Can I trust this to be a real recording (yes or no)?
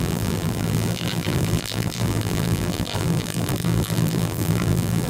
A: no